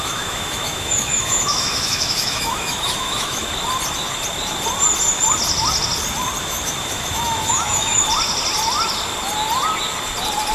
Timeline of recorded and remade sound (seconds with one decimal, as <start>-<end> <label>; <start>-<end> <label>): 0.0-3.4 remade; 3.4-6.4 recorded; 6.4-8.0 remade; 8.0-10.5 recorded